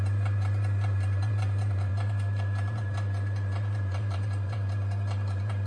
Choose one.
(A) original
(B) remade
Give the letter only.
B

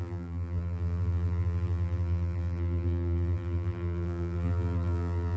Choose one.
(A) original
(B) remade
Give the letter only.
B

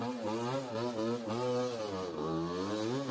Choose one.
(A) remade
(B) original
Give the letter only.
B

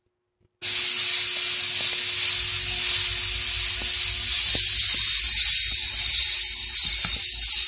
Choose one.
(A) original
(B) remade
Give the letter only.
A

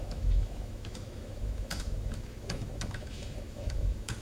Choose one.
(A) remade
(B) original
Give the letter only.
A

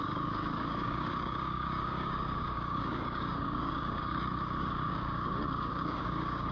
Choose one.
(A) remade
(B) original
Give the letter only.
A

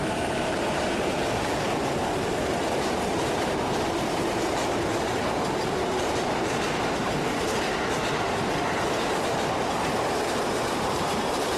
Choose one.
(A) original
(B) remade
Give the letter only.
B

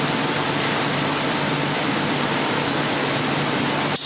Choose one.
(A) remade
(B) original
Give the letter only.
B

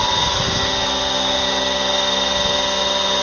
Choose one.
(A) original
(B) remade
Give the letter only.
A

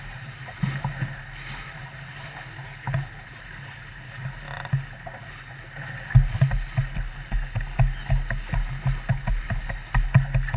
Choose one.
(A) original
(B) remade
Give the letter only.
A